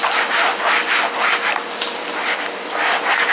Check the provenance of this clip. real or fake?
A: real